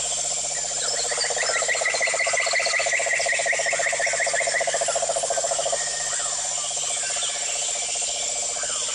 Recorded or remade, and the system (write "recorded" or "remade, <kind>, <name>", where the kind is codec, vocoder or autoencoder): recorded